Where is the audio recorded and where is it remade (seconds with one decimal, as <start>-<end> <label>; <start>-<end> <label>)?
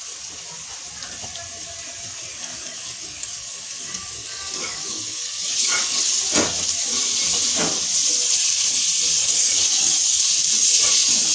0.0-2.3 recorded; 2.3-6.2 remade; 6.2-9.2 recorded; 9.2-10.2 remade; 10.2-11.3 recorded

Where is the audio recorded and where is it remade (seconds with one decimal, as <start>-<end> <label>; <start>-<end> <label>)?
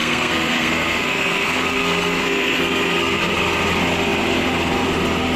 0.0-3.2 remade; 3.2-5.4 recorded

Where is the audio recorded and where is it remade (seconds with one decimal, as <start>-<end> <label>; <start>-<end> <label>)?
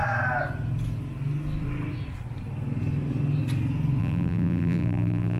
0.0-4.0 recorded; 4.0-5.4 remade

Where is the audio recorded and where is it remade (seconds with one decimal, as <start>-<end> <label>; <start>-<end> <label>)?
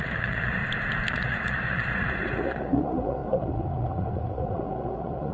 0.0-0.6 remade; 0.6-1.1 recorded; 1.1-5.3 remade